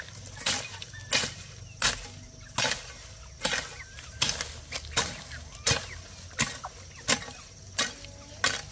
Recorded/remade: recorded